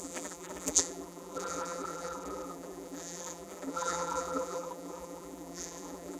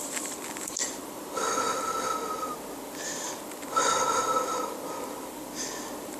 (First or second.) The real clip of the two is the second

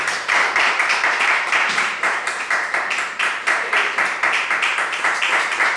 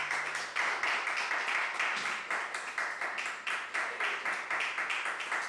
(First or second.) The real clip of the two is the second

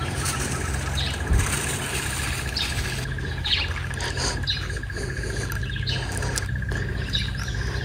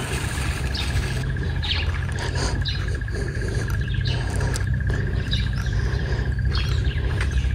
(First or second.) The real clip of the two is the first